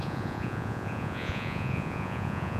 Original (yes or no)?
no